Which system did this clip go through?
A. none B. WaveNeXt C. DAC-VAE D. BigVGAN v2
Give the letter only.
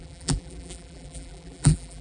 D